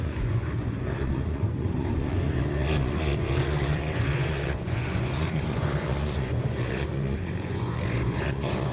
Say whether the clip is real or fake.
fake